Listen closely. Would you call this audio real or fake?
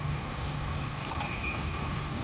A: fake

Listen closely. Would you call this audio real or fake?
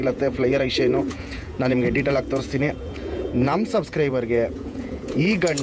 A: fake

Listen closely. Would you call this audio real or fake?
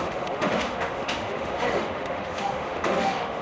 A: fake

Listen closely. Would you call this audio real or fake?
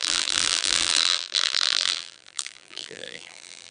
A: fake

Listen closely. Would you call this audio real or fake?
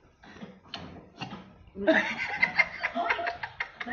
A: real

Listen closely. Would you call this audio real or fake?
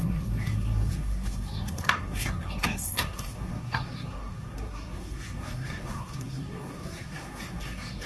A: fake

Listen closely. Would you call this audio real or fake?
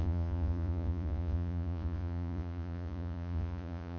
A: fake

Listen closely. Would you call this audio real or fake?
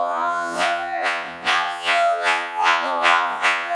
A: fake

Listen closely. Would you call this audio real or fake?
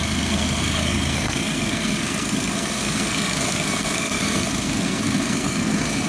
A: fake